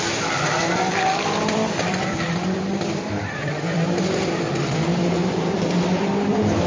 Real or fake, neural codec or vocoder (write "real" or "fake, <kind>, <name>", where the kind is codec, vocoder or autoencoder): fake, vocoder, BigVGAN v2